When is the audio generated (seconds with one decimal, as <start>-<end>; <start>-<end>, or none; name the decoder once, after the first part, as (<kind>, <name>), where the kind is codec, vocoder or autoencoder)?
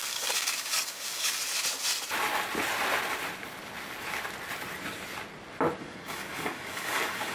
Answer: 0.0-1.4 (codec, DAC); 5.8-7.3